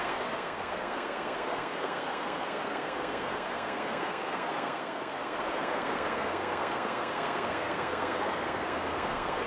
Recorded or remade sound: remade